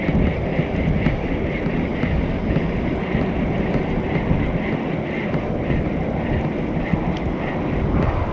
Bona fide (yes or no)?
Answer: yes